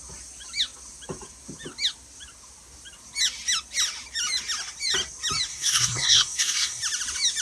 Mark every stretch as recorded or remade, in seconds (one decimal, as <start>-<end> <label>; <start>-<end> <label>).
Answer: 0.0-5.5 recorded; 5.5-6.8 remade; 6.8-7.4 recorded